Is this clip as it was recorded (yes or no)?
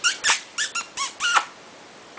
yes